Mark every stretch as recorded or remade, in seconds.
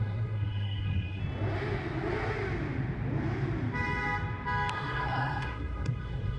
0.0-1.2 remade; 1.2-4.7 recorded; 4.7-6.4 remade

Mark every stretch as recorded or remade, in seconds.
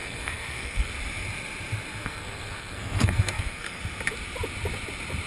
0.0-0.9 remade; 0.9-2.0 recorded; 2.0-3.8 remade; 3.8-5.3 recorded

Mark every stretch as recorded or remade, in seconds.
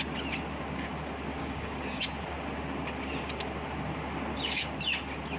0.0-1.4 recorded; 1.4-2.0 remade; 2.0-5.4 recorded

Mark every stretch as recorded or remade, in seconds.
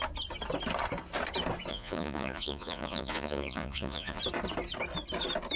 0.0-1.7 recorded; 1.7-4.2 remade; 4.2-5.6 recorded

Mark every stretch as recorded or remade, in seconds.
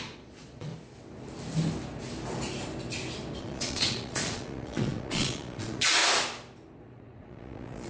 0.0-0.7 remade; 0.7-3.4 recorded; 3.4-6.0 remade; 6.0-6.8 recorded; 6.8-7.9 remade